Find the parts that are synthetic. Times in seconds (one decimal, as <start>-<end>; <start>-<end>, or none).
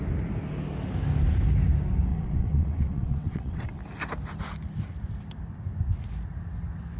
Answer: 2.1-3.7